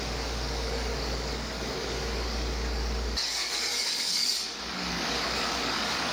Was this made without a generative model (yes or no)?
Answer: no